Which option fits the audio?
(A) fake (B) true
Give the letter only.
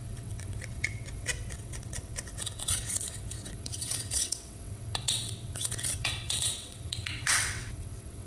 A